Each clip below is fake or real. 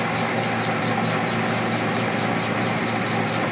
real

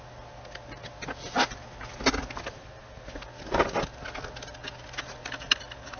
real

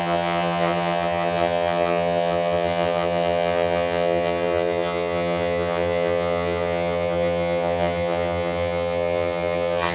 fake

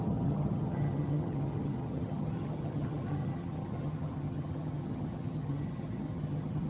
fake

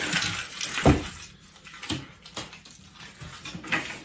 real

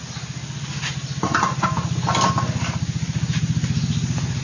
real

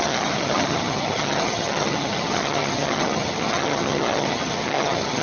fake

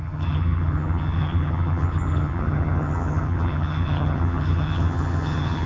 fake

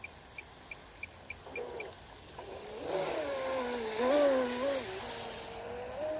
real